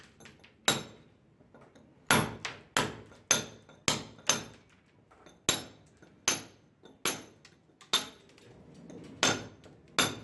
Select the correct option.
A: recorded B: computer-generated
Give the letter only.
A